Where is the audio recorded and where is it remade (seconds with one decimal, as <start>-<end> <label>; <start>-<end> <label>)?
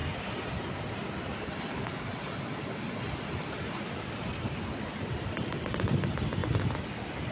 0.0-7.3 recorded